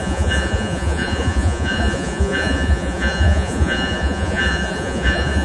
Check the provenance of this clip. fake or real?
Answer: fake